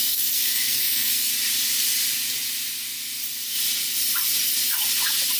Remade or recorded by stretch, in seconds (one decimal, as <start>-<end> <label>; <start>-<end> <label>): 0.0-1.3 remade; 1.3-5.4 recorded

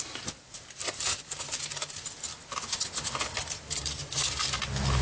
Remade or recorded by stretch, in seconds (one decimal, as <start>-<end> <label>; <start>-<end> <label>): 0.0-0.8 recorded; 0.8-1.8 remade; 1.8-5.0 recorded

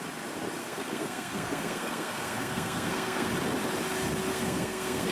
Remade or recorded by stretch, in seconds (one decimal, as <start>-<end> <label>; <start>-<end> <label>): 0.0-0.6 recorded; 0.6-3.3 remade; 3.3-4.3 recorded; 4.3-5.1 remade